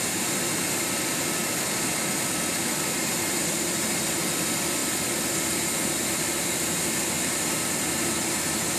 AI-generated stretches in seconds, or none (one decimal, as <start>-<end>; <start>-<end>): 0.0-8.8